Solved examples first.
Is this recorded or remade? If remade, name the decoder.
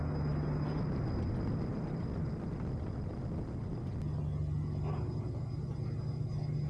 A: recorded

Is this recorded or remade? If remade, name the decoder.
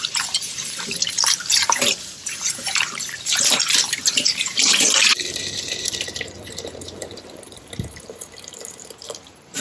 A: remade, vocoder, BigVGAN v2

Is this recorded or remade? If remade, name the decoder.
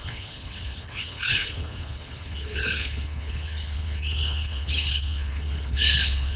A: remade, codec, HILCodec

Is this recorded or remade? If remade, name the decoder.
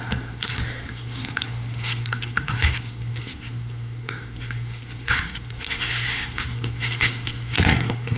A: remade, codec, SNAC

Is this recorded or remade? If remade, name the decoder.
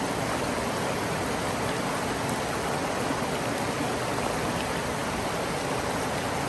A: recorded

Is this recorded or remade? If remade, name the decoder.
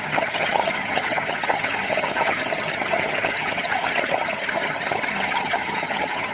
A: remade, vocoder, HiFi-GAN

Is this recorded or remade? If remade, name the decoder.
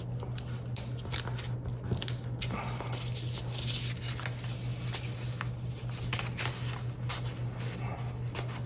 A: recorded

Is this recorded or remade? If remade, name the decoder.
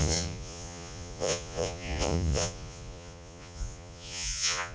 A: remade, vocoder, Vocos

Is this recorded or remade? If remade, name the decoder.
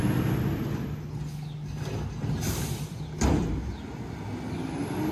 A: recorded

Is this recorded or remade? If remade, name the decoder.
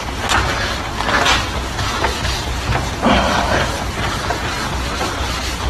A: recorded